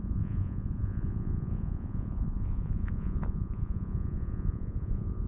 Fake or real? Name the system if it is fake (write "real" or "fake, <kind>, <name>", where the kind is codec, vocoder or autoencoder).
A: fake, vocoder, Vocos